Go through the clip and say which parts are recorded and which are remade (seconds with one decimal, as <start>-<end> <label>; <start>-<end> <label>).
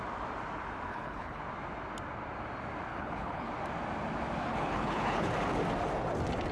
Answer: 0.0-0.9 recorded; 0.9-1.4 remade; 1.4-2.9 recorded; 2.9-3.5 remade; 3.5-4.4 recorded; 4.4-5.3 remade; 5.3-6.5 recorded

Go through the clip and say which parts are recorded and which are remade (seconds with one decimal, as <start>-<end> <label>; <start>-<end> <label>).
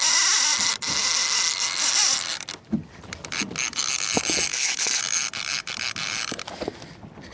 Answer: 0.0-4.5 recorded; 4.5-5.0 remade; 5.0-7.3 recorded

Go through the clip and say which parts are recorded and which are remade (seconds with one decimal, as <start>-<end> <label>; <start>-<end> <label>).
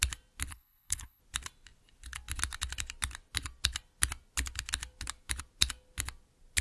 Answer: 0.0-0.5 recorded; 0.5-1.2 remade; 1.2-6.6 recorded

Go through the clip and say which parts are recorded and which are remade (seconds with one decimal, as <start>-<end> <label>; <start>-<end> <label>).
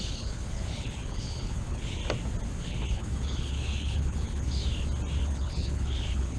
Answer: 0.0-2.0 remade; 2.0-2.6 recorded; 2.6-4.6 remade; 4.6-5.2 recorded; 5.2-6.4 remade